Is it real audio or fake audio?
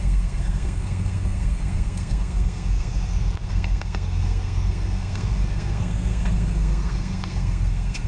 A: fake